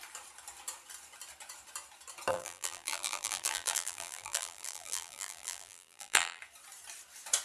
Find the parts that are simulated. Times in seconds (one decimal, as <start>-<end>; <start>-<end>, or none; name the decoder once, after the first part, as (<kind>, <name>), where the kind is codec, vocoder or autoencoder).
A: 2.3-6.4 (vocoder, BigVGAN v2)